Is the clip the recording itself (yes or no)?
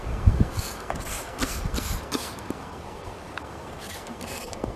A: no